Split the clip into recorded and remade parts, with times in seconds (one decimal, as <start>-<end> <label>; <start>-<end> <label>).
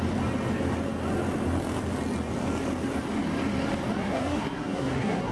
0.0-4.0 recorded; 4.0-5.3 remade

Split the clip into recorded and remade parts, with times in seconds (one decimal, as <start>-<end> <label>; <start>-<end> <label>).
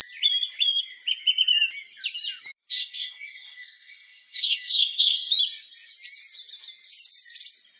0.0-2.7 recorded; 2.7-5.3 remade; 5.3-7.8 recorded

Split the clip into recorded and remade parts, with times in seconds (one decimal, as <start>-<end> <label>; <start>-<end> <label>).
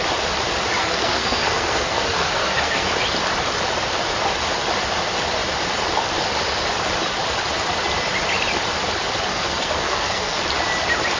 0.0-0.8 recorded; 0.8-2.9 remade; 2.9-9.3 recorded; 9.3-10.4 remade; 10.4-11.2 recorded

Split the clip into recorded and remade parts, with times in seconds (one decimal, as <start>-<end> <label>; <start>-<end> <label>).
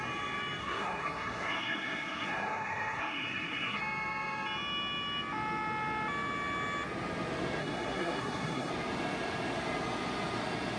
0.0-0.6 recorded; 0.6-3.8 remade; 3.8-7.6 recorded; 7.6-8.7 remade; 8.7-10.8 recorded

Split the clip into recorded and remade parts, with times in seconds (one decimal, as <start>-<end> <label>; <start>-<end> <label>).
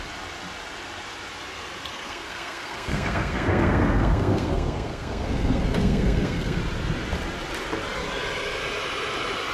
0.0-1.9 recorded; 1.9-6.6 remade; 6.6-9.5 recorded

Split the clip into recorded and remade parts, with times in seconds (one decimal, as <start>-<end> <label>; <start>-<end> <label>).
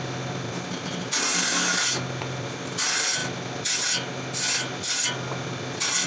0.0-6.1 recorded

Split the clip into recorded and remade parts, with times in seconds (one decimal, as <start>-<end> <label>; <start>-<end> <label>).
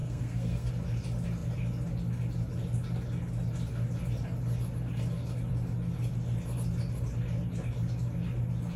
0.0-0.7 remade; 0.7-8.8 recorded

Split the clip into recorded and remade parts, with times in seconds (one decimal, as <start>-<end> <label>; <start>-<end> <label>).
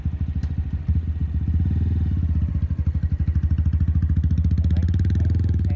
0.0-5.8 recorded